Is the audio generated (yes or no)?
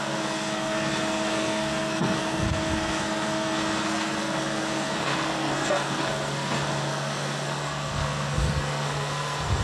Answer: yes